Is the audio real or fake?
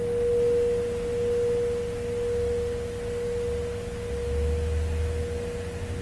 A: real